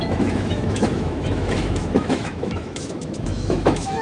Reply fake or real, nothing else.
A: fake